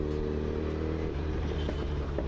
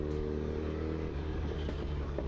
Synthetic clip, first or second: second